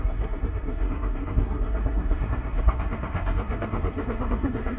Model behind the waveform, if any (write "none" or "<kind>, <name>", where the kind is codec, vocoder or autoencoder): codec, SNAC